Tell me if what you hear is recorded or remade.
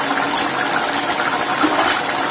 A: recorded